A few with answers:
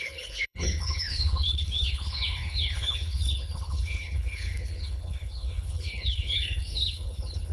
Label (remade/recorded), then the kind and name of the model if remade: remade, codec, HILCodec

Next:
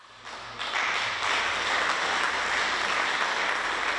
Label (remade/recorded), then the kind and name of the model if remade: recorded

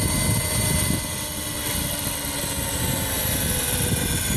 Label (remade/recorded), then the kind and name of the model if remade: recorded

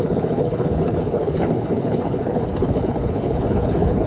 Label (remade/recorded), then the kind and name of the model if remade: remade, codec, HILCodec